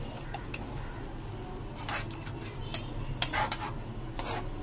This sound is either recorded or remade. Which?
recorded